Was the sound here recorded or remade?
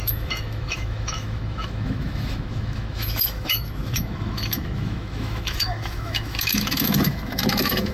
remade